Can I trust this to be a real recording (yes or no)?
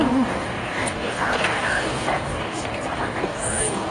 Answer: no